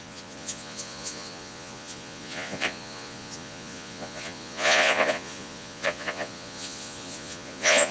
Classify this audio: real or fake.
fake